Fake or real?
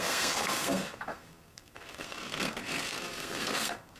fake